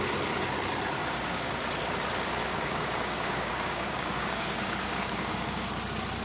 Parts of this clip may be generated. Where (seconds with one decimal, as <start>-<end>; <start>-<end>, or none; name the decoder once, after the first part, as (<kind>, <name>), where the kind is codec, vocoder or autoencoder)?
1.0-1.5 (codec, DAC); 2.4-5.7